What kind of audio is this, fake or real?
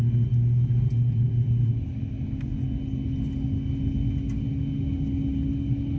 real